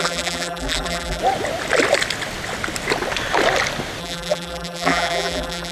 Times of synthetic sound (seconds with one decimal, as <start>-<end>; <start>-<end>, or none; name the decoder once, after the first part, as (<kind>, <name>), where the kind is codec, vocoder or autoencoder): 0.0-1.2 (vocoder, BigVGAN v2); 4.0-5.7

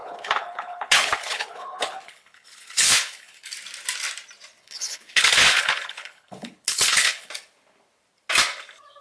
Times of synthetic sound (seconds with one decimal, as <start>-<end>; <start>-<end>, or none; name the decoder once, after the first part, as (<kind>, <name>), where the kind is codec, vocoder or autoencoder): 0.0-3.5 (codec, HILCodec); 4.6-7.3

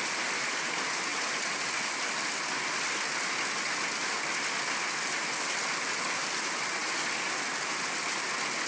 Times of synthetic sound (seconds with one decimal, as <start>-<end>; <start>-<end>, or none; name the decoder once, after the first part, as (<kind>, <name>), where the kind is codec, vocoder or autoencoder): none

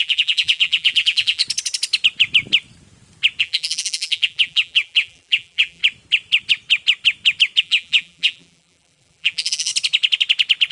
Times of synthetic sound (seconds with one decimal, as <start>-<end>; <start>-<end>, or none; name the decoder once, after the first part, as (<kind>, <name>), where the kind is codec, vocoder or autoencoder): 0.0-1.4 (vocoder, BigVGAN v2); 3.4-5.8; 7.6-9.7

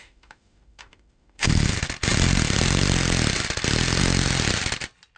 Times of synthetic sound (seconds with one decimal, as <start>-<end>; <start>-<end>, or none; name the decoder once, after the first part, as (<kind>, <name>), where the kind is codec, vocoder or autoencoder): 0.0-1.5 (autoencoder, DAC-VAE)

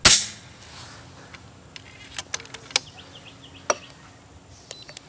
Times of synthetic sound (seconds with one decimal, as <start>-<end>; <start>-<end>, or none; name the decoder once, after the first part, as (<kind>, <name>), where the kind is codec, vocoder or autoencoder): none

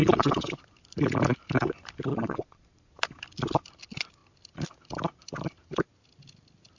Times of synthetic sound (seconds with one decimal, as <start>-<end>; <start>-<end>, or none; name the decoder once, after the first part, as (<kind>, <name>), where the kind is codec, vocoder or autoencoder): 0.0-0.6 (vocoder, Vocos); 2.1-2.9